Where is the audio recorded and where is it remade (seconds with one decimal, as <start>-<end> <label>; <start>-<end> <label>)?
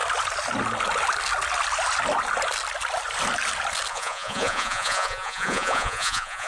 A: 0.0-3.9 recorded; 3.9-6.5 remade